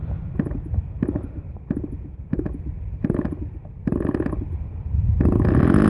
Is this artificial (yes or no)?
no